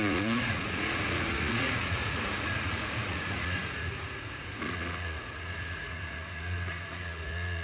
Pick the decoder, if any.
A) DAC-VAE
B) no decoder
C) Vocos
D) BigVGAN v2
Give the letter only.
C